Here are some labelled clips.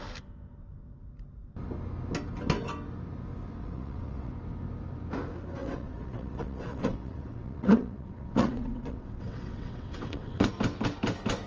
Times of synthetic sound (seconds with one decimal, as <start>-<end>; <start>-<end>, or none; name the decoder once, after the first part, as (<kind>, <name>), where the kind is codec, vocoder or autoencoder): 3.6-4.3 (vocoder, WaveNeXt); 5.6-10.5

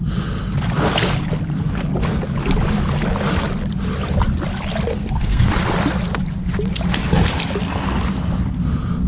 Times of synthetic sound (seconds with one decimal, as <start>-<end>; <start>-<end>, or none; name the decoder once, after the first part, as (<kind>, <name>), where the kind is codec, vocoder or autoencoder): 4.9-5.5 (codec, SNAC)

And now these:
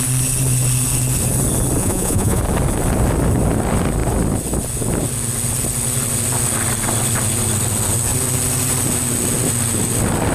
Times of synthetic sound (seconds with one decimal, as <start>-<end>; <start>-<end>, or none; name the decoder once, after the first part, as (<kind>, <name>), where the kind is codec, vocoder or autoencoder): 1.8-2.4 (vocoder, Vocos)

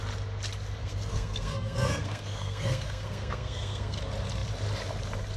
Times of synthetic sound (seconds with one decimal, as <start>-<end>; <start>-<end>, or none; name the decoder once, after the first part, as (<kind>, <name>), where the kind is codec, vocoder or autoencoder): 0.8-4.0 (codec, SNAC)

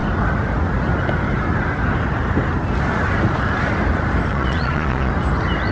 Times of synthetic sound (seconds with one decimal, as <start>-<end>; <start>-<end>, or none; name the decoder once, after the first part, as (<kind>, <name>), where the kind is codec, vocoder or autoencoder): 4.3-5.1 (vocoder, Vocos)

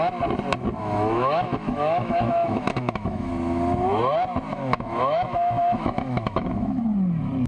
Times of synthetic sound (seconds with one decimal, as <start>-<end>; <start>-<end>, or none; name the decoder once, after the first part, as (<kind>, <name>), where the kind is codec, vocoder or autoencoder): 0.8-3.3 (autoencoder, DAC-VAE); 4.5-6.8

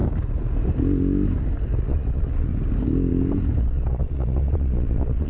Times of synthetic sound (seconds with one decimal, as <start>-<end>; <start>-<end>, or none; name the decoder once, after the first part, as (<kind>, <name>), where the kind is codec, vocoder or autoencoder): 1.8-2.5 (vocoder, Vocos); 3.6-5.3